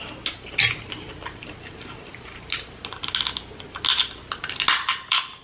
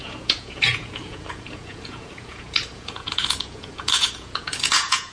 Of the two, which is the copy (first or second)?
second